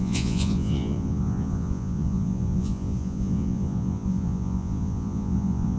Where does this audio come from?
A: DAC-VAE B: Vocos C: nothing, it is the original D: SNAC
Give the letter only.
B